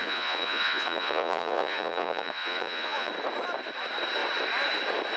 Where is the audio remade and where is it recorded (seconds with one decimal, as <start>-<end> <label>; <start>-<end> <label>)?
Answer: 0.0-3.1 remade; 3.1-5.2 recorded